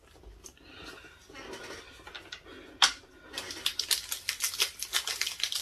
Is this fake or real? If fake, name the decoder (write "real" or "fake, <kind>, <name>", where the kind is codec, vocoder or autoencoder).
real